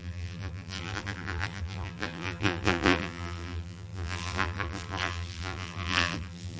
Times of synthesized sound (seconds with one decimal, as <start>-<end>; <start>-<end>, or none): 0.0-6.6